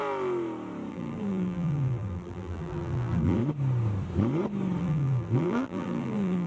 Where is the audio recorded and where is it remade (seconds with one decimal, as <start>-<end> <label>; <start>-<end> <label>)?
0.0-0.9 recorded; 0.9-3.4 remade; 3.4-4.8 recorded; 4.8-6.5 remade